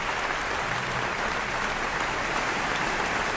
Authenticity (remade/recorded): remade